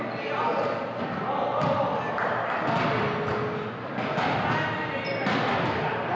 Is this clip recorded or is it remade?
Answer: recorded